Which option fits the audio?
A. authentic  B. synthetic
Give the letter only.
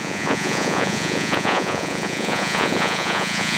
B